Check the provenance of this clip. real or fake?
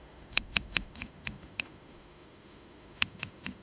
fake